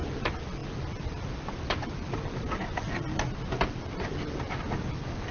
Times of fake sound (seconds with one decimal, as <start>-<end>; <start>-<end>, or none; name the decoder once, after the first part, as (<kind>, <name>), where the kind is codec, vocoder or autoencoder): none